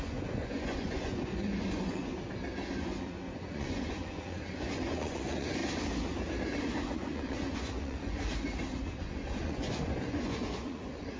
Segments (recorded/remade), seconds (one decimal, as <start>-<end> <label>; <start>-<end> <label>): 0.0-2.1 remade; 2.1-2.7 recorded; 2.7-5.6 remade; 5.6-6.6 recorded; 6.6-8.3 remade; 8.3-8.8 recorded; 8.8-11.2 remade